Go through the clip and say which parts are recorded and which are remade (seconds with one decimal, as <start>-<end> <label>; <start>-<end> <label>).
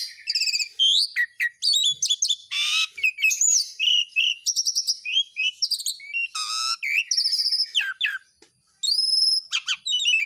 0.0-2.4 recorded; 2.4-5.8 remade; 5.8-10.3 recorded